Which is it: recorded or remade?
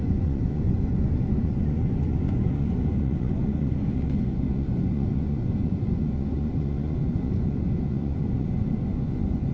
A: remade